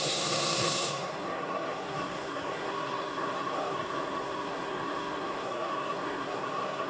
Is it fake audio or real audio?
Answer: fake